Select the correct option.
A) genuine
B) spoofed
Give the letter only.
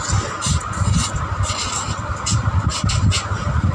A